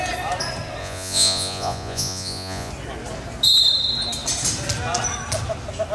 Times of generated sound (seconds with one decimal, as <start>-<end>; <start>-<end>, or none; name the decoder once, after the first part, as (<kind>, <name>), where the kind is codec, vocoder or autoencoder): 0.8-2.7 (vocoder, Vocos)